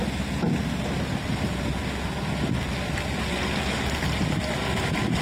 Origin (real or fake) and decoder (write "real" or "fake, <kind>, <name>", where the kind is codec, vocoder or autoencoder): real